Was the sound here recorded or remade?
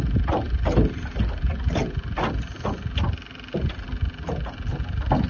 recorded